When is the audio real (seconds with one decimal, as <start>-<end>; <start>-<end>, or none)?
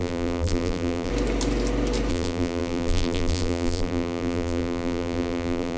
1.1-2.1